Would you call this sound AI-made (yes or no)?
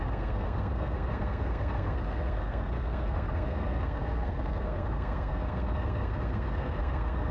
yes